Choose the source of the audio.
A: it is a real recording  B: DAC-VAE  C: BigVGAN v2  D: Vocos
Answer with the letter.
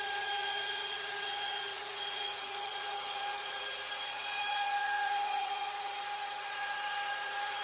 D